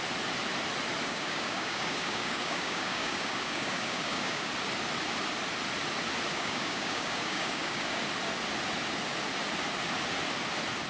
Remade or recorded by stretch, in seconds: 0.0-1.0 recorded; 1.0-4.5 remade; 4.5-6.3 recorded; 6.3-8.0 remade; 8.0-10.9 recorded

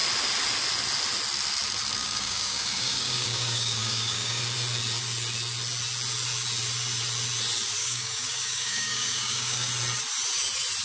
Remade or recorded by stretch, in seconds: 0.0-2.0 recorded; 2.0-4.4 remade; 4.4-7.8 recorded; 7.8-9.7 remade; 9.7-10.8 recorded